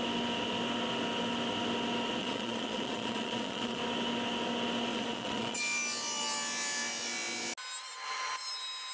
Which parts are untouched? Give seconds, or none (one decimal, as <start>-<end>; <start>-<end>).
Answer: 0.0-2.2; 3.8-4.9; 5.6-8.9